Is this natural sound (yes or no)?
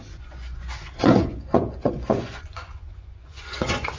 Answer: no